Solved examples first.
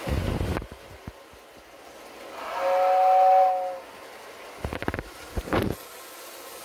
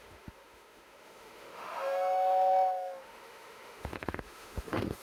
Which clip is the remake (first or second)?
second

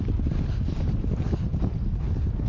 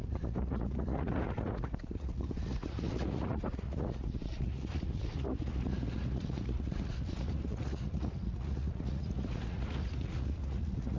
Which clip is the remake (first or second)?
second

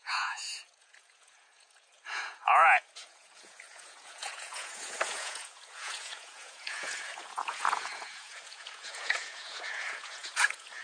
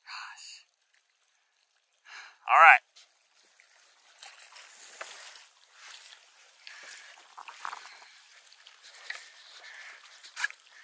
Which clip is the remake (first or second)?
first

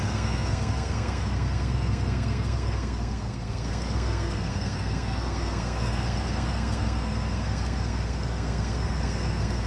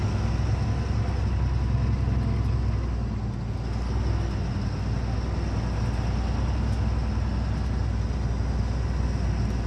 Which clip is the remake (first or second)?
first